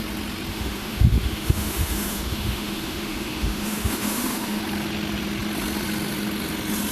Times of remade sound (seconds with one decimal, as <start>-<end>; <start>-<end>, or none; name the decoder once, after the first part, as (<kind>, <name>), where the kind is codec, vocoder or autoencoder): 0.5-4.6 (autoencoder, DAC-VAE)